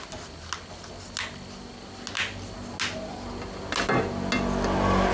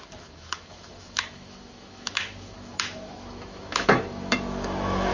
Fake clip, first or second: second